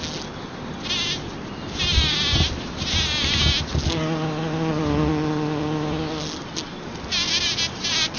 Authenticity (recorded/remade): recorded